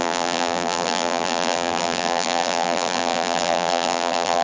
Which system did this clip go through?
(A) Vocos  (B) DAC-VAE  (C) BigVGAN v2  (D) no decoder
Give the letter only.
C